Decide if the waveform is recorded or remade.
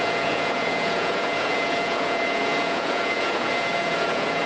remade